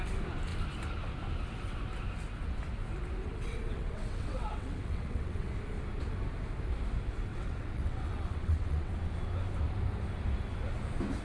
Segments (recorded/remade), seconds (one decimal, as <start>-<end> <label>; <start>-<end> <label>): 0.0-3.2 recorded; 3.2-5.5 remade; 5.5-7.3 recorded; 7.3-8.9 remade; 8.9-11.2 recorded